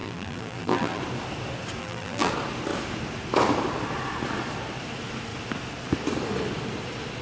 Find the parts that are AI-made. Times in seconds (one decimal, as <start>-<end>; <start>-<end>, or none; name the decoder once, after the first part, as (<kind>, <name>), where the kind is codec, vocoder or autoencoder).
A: 0.0-1.0 (vocoder, BigVGAN v2); 1.8-2.3